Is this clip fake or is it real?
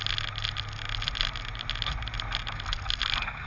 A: real